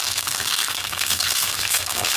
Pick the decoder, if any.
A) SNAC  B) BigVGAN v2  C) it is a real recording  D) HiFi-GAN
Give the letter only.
A